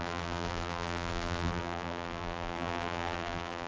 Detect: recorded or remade remade